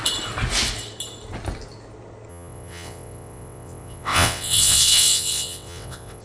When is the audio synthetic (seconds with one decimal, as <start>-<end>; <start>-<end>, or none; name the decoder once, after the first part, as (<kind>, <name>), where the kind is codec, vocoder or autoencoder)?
2.3-6.2 (vocoder, WaveNeXt)